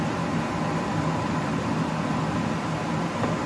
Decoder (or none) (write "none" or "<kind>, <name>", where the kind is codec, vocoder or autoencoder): none